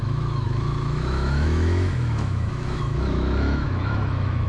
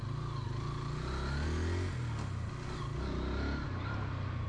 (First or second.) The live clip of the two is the second